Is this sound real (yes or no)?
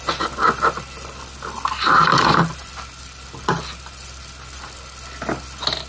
yes